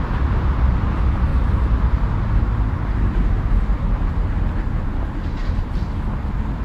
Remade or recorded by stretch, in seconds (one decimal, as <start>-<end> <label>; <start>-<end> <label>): 0.0-6.6 recorded